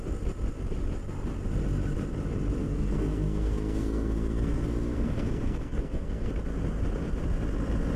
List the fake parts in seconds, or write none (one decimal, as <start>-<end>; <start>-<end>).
2.6-6.3